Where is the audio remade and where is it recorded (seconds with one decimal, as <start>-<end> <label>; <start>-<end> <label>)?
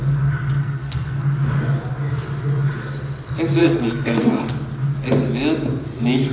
0.0-0.6 recorded; 0.6-1.2 remade; 1.2-3.6 recorded; 3.6-4.4 remade; 4.4-6.3 recorded